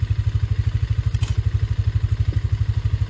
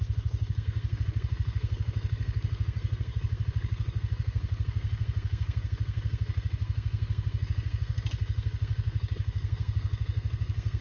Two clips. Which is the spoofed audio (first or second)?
second